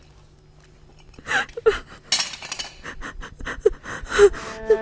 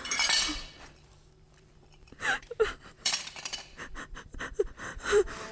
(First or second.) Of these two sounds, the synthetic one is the second